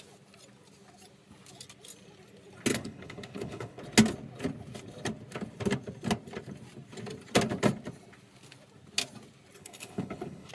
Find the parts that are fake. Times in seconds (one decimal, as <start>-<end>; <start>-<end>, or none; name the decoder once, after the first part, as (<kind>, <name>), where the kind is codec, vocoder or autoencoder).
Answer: 2.7-3.8 (codec, HILCodec); 9.6-10.5